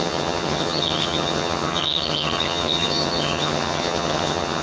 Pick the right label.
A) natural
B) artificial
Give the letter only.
B